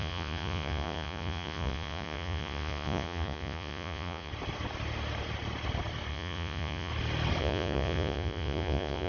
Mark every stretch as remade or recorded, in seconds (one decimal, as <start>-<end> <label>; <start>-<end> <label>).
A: 0.0-4.3 remade; 4.3-6.1 recorded; 6.1-6.9 remade; 6.9-7.4 recorded; 7.4-9.1 remade